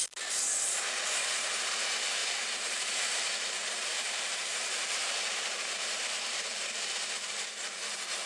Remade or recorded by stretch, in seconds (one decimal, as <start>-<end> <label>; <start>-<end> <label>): 0.0-2.2 recorded; 2.2-6.9 remade; 6.9-8.3 recorded